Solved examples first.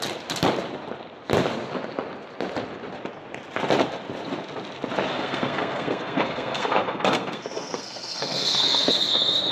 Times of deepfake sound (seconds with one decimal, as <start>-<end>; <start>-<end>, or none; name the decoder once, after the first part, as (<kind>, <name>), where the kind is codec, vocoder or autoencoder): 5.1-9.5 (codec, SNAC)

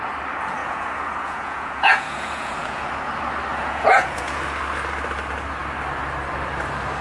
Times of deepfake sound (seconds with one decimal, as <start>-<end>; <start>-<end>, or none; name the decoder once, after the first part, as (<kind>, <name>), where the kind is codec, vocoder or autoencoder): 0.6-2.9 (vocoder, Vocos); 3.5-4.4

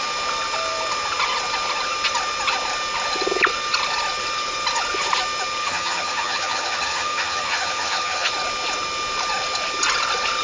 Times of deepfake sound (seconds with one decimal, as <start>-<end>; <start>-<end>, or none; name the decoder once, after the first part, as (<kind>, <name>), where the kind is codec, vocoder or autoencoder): 5.6-8.3 (vocoder, HiFi-GAN)

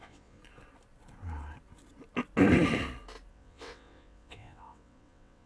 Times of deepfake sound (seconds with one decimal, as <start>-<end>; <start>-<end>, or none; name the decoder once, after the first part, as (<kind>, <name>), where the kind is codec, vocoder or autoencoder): 0.0-0.4 (vocoder, WaveNeXt); 3.3-5.5

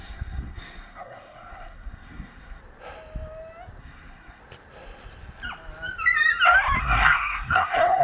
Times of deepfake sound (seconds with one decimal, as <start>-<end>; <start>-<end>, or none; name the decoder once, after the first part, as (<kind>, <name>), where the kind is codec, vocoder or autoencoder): 0.0-2.6 (codec, SNAC); 3.8-4.4; 6.8-8.0